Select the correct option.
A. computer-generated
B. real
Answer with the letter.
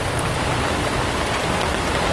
B